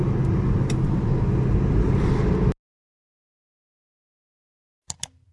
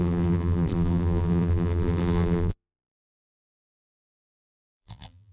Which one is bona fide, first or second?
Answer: first